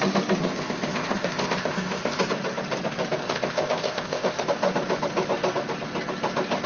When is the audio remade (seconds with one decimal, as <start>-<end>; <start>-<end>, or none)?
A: 0.4-2.2; 3.2-4.4